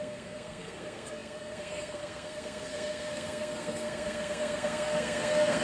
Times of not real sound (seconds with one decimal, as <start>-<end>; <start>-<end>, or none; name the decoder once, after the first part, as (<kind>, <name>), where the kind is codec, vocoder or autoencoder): 0.0-5.6 (codec, SNAC)